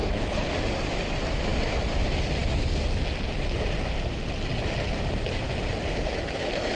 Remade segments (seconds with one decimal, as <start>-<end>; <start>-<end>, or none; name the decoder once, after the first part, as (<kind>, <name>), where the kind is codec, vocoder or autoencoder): 0.0-0.5 (codec, HILCodec)